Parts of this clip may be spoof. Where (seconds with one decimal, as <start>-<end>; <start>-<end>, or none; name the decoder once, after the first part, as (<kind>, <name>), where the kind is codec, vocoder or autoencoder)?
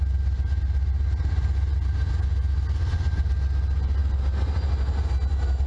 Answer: none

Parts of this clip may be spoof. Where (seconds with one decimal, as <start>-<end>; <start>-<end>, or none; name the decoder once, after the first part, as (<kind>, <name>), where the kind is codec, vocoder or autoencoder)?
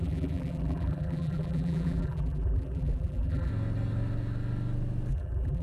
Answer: 0.0-3.5 (vocoder, BigVGAN v2); 5.1-5.6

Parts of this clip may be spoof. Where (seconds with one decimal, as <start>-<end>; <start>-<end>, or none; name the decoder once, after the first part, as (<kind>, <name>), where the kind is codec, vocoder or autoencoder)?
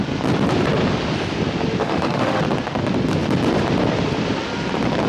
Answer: 1.8-2.4 (autoencoder, DAC-VAE)